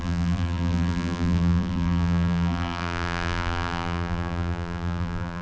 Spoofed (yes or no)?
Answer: yes